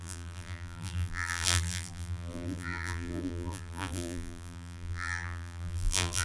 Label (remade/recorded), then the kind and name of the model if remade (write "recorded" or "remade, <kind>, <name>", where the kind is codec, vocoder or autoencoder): remade, vocoder, BigVGAN v2